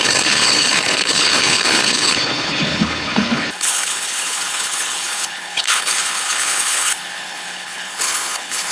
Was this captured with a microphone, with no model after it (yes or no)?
no